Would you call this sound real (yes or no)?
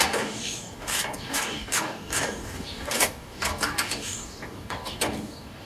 no